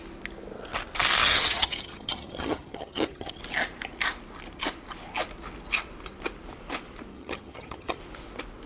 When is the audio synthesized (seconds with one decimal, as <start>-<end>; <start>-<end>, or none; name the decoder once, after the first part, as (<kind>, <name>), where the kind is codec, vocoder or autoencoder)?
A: 1.2-3.4 (vocoder, HiFi-GAN); 7.1-8.0